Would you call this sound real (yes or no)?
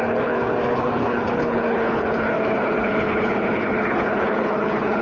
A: no